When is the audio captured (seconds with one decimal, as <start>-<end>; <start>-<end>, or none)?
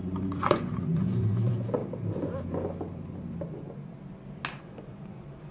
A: 1.8-4.6